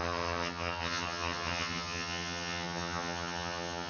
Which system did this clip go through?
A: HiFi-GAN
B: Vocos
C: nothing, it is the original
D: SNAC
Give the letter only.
A